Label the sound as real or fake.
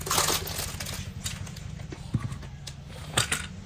real